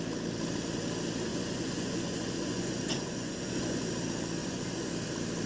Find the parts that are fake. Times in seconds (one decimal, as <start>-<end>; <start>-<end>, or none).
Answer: 1.3-3.8; 4.4-4.9